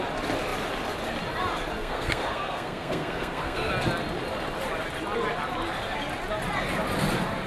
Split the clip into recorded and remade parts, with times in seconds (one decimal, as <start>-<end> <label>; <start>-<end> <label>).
0.0-1.8 recorded; 1.8-3.7 remade; 3.7-7.5 recorded